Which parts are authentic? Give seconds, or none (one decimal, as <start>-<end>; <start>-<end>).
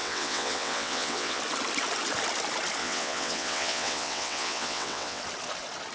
1.4-2.8; 5.2-5.9